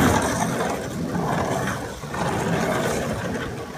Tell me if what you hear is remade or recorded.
recorded